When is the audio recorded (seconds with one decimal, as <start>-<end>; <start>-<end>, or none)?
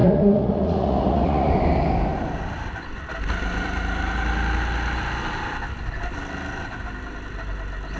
1.5-8.0